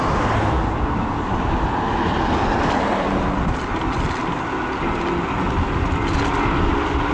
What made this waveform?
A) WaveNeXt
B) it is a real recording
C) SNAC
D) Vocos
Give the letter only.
B